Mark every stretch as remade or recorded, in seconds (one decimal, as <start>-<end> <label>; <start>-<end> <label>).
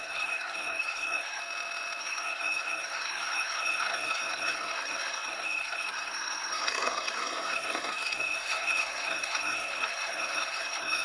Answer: 0.0-1.4 remade; 1.4-2.0 recorded; 2.0-11.0 remade